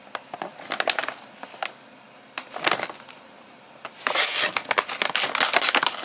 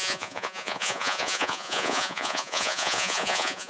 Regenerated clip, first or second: second